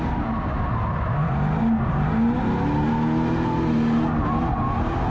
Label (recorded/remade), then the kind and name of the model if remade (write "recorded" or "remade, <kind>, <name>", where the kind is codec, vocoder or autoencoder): recorded